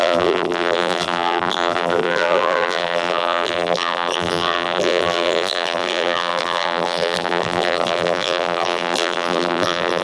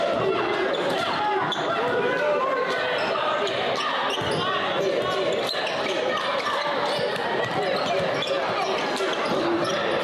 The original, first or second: second